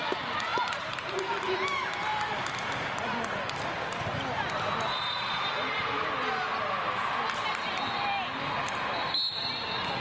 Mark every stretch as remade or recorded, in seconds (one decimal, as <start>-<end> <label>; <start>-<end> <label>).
0.0-10.0 recorded